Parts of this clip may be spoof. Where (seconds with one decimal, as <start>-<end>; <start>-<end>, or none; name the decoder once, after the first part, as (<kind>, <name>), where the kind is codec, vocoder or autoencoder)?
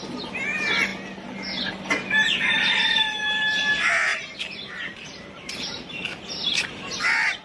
2.8-3.6 (vocoder, BigVGAN v2); 4.1-5.9